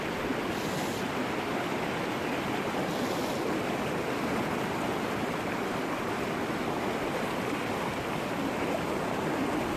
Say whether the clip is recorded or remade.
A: recorded